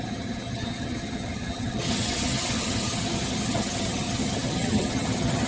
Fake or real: fake